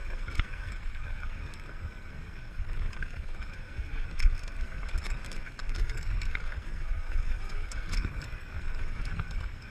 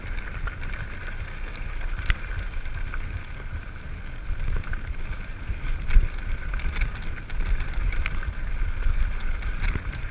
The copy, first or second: first